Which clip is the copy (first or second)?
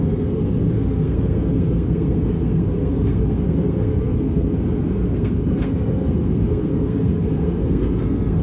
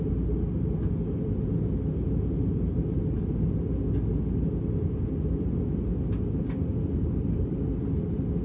first